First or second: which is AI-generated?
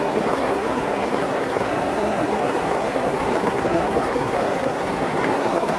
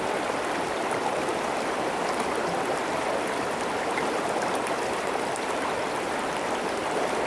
first